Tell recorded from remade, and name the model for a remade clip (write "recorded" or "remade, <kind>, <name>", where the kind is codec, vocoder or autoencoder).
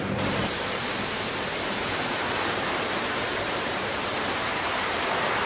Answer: remade, vocoder, BigVGAN v2